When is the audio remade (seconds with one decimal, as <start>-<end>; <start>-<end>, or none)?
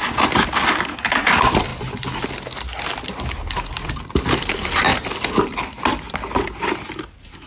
none